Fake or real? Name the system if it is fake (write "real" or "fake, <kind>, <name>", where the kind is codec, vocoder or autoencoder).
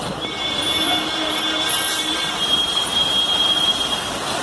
fake, vocoder, BigVGAN v2